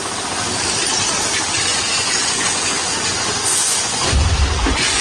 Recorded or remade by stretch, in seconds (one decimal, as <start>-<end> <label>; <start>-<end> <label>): 0.0-1.7 recorded; 1.7-5.0 remade